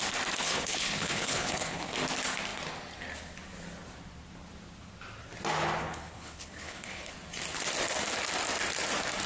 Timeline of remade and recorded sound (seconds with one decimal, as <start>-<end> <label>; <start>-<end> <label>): 0.0-0.4 recorded; 0.4-1.9 remade; 1.9-5.8 recorded; 5.8-7.1 remade; 7.1-9.3 recorded